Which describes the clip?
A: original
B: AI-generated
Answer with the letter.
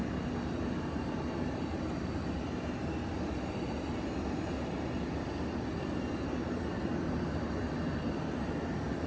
A